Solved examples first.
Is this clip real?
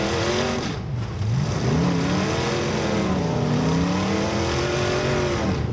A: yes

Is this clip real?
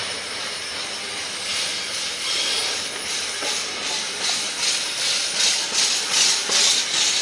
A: yes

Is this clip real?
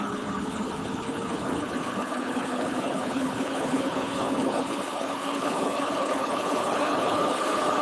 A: no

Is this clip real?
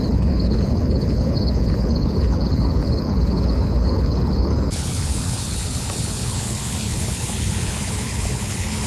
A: no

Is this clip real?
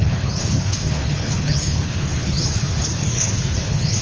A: no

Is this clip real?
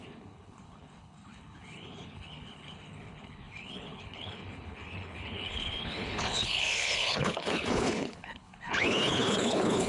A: no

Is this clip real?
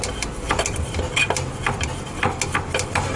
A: yes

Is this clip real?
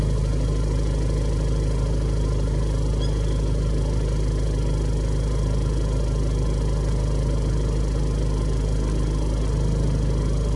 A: yes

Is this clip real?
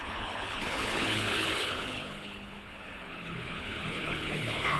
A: no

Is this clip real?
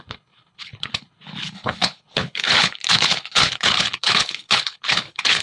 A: no